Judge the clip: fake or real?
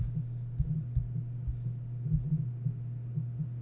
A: real